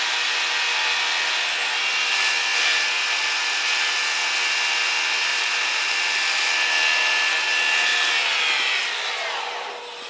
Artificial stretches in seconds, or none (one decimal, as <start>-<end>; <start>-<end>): 5.3-6.0